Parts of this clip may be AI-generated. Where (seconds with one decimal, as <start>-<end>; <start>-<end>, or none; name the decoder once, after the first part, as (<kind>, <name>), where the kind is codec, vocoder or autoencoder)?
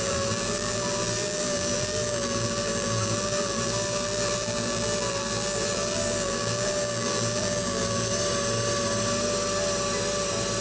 0.0-8.1 (vocoder, BigVGAN v2)